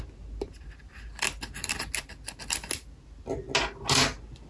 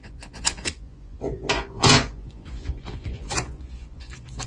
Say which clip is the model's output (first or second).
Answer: second